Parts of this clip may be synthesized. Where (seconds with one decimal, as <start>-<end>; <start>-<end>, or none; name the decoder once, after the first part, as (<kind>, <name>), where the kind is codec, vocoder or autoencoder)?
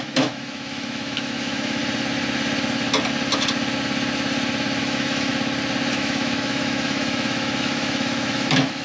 0.0-1.8 (autoencoder, DAC-VAE); 4.8-5.3; 5.9-8.8